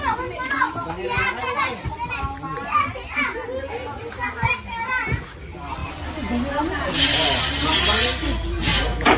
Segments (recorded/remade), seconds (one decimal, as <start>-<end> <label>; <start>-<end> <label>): 0.0-9.2 recorded